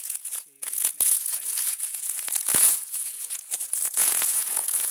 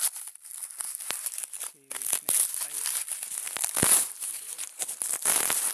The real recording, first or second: second